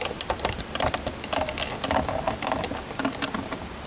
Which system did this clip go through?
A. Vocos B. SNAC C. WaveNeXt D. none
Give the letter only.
D